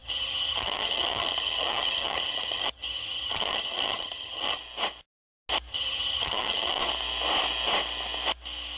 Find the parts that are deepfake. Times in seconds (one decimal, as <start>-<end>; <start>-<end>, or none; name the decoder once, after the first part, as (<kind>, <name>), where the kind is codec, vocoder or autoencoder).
0.0-4.6 (vocoder, HiFi-GAN); 5.7-6.8